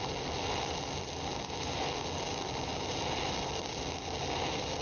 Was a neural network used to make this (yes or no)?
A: no